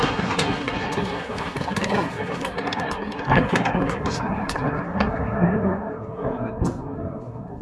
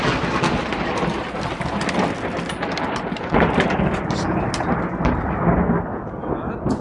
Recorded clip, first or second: second